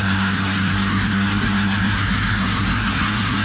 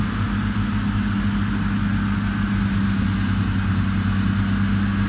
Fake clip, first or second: first